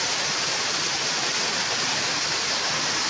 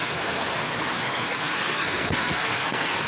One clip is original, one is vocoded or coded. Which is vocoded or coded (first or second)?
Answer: second